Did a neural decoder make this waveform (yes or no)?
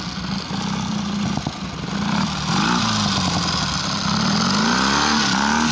no